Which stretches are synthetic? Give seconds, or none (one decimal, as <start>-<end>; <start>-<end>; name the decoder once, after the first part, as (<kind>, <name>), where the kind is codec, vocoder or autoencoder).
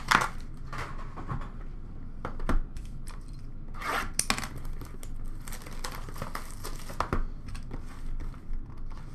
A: 1.3-3.9 (vocoder, BigVGAN v2)